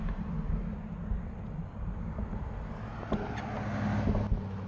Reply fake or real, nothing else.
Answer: real